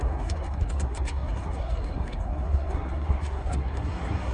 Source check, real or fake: fake